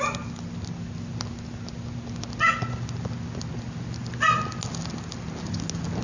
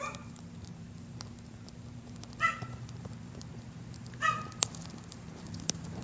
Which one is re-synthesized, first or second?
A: second